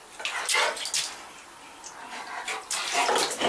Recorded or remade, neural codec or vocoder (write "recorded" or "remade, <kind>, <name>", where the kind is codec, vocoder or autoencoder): recorded